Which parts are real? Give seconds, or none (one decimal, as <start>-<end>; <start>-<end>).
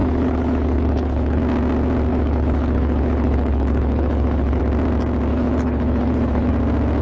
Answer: 1.4-2.1; 4.6-5.3; 6.5-7.0